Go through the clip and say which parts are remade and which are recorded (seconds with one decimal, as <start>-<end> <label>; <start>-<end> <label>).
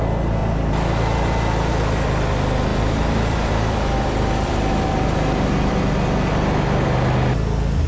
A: 0.0-2.7 recorded; 2.7-5.8 remade; 5.8-7.9 recorded